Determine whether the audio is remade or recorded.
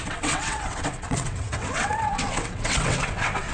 remade